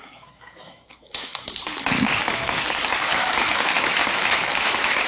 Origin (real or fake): fake